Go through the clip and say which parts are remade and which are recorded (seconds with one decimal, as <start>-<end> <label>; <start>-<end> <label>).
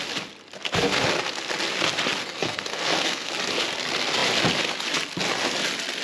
0.0-2.2 recorded; 2.2-3.3 remade; 3.3-6.0 recorded